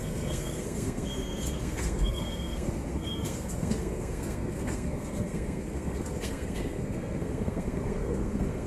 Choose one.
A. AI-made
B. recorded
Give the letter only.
A